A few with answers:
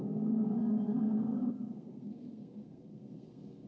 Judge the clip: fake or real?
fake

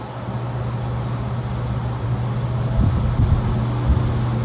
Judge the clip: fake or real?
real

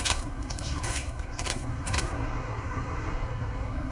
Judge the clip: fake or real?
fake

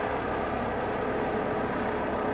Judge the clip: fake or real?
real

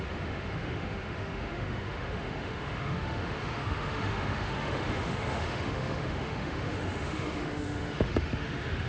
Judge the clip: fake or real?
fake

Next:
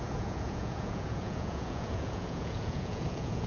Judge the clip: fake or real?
fake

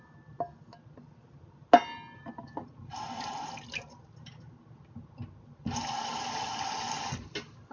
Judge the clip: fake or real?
real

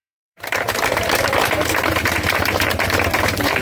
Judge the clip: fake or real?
fake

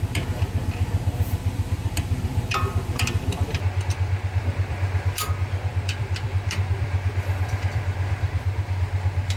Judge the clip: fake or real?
fake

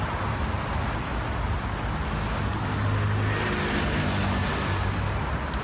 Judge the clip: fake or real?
real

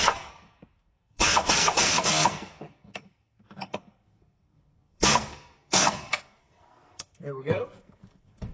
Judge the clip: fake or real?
fake